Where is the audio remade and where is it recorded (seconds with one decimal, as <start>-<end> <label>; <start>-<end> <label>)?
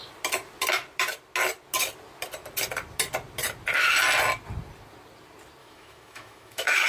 0.0-5.6 recorded; 5.6-6.9 remade